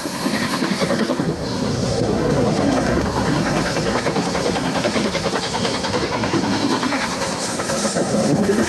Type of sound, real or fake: fake